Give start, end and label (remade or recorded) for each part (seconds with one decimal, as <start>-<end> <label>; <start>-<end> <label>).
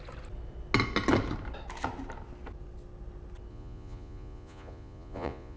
0.0-3.5 recorded; 3.5-5.6 remade